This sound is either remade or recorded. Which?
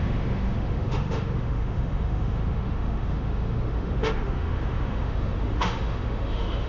remade